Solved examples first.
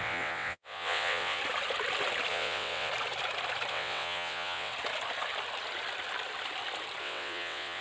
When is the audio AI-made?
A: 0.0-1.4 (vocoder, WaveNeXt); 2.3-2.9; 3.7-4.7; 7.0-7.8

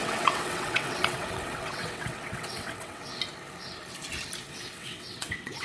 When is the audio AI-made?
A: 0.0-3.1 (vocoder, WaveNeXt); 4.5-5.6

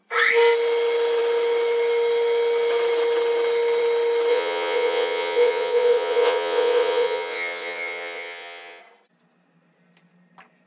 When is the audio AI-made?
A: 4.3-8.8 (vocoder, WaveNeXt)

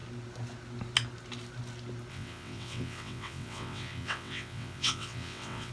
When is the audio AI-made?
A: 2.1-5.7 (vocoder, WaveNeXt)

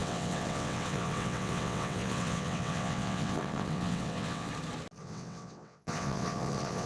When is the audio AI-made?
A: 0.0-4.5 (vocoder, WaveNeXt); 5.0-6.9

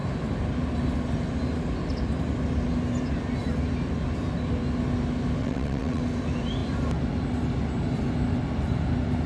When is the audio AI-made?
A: 5.4-6.0 (vocoder, WaveNeXt)

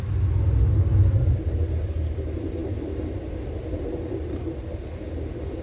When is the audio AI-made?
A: none

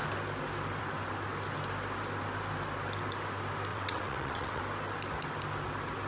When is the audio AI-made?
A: 3.7-4.6 (vocoder, WaveNeXt)